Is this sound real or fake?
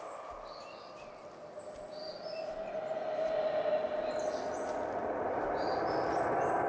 real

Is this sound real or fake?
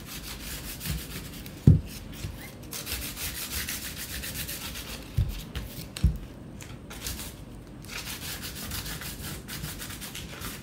real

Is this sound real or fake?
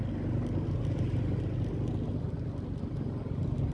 real